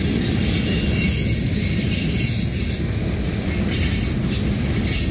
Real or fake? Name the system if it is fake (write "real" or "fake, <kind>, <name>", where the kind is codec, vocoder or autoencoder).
real